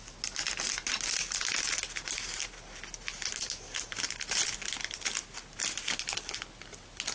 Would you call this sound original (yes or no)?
yes